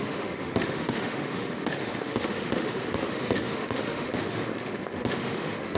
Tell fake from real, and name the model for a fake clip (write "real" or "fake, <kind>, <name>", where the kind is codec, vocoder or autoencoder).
fake, autoencoder, DAC-VAE